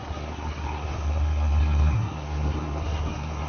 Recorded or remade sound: remade